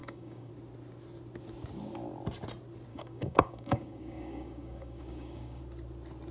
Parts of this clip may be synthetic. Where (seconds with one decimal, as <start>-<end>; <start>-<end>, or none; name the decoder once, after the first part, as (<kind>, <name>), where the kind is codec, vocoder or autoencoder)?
0.0-0.5 (codec, DAC); 2.9-5.6